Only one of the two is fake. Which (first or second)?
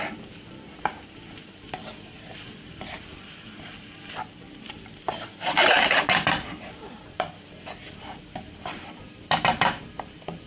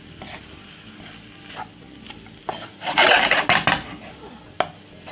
first